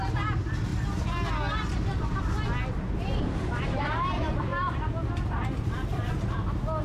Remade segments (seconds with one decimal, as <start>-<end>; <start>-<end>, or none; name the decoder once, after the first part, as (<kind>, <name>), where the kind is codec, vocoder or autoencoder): none